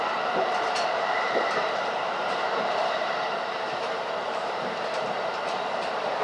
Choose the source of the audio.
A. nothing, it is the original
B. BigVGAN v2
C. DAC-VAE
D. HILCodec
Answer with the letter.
B